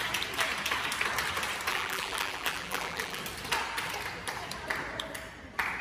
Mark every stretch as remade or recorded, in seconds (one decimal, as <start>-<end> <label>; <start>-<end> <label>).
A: 0.0-1.7 recorded; 1.7-3.2 remade; 3.2-5.8 recorded